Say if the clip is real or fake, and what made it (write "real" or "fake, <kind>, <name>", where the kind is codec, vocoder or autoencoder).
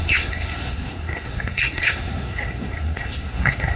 fake, codec, SNAC